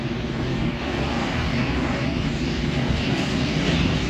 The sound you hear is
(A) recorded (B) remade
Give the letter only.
B